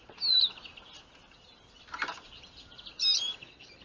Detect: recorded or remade recorded